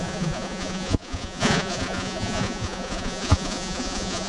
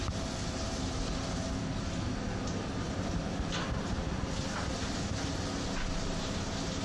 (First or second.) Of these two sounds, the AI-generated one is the first